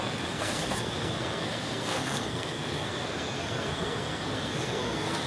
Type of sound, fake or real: fake